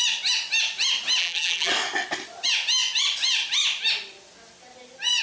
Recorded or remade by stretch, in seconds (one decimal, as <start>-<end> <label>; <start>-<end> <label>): 0.0-1.2 recorded; 1.2-1.7 remade; 1.7-5.2 recorded